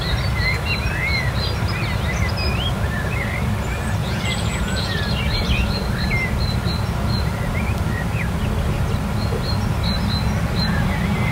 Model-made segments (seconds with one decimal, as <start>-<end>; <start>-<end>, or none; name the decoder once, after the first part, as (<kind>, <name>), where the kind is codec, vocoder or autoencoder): 4.0-5.0 (vocoder, Vocos)